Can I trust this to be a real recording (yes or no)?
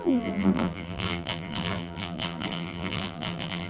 no